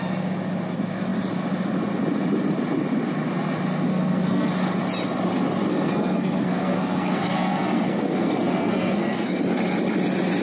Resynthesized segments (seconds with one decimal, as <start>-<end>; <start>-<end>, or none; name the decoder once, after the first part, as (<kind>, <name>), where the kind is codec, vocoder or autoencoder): 3.9-4.5 (codec, SNAC); 5.7-9.4